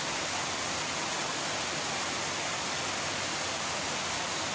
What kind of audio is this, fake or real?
real